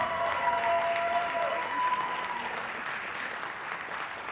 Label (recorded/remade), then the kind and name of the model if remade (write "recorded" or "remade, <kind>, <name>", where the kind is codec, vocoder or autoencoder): recorded